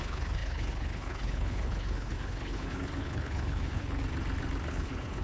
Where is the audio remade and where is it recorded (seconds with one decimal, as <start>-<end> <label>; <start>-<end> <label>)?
0.0-4.0 remade; 4.0-4.7 recorded; 4.7-5.2 remade